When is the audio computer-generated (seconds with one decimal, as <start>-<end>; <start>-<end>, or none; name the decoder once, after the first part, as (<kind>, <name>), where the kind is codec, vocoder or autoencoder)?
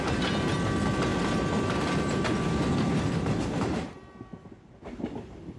none